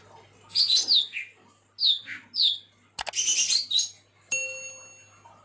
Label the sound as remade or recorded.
recorded